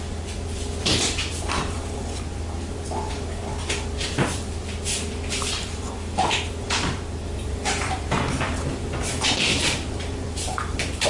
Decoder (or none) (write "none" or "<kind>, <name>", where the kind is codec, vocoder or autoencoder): vocoder, BigVGAN v2